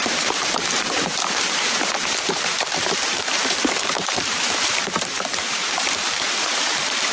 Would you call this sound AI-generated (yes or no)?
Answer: yes